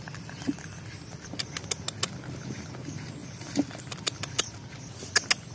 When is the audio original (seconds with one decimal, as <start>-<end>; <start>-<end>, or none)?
0.0-5.5